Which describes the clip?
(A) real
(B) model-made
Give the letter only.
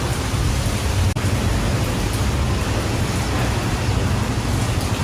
A